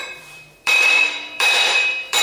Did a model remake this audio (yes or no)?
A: yes